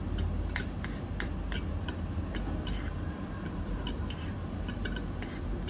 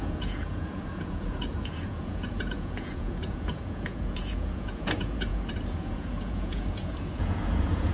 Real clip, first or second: first